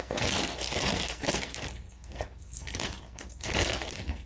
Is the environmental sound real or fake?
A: fake